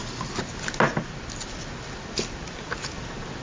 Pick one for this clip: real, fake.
real